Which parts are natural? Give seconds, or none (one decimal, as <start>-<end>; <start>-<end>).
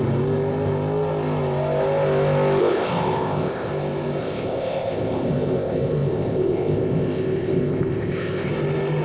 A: 0.0-2.6; 3.7-4.2; 8.5-9.0